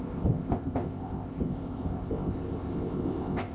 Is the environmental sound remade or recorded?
remade